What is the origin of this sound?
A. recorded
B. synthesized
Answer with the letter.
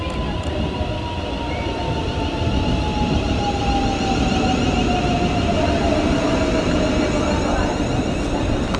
A